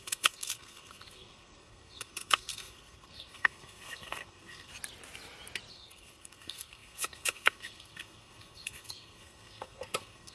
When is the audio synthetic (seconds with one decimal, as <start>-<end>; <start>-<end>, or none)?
0.0-4.7; 5.7-10.3